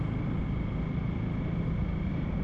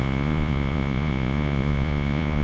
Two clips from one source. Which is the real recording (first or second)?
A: first